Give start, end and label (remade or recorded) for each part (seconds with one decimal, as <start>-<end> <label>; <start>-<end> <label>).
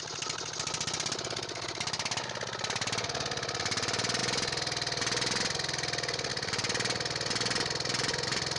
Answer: 0.0-8.6 recorded